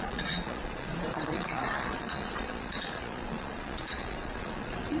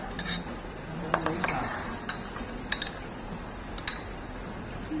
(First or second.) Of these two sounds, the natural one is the second